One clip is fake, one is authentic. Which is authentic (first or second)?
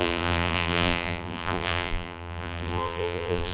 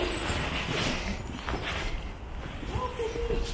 second